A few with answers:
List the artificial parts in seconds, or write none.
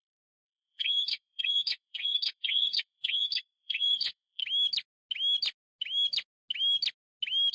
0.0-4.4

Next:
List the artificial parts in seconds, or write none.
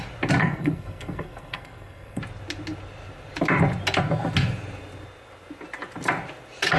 0.4-2.2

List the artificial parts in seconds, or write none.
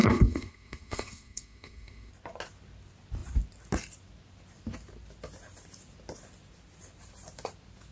0.0-2.1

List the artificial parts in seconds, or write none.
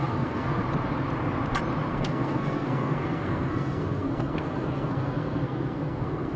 0.0-0.6; 1.9-6.4